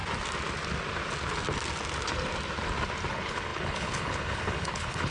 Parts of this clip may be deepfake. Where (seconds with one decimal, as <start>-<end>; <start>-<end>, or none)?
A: 3.1-5.1